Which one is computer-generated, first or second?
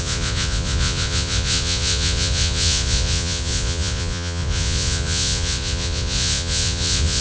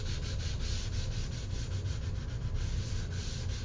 first